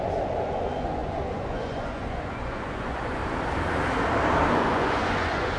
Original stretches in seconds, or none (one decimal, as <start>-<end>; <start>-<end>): 3.2-4.5